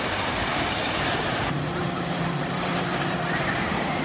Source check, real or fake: fake